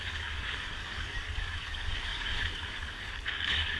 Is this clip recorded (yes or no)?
no